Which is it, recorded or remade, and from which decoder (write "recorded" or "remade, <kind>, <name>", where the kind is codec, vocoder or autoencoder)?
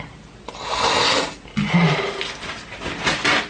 recorded